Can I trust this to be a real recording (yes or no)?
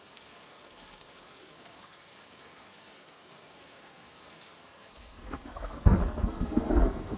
no